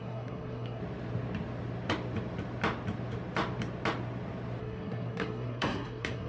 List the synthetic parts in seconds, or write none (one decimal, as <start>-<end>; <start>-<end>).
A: 0.0-0.8; 4.6-6.3